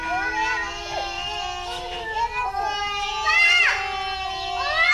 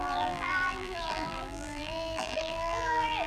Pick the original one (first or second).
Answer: first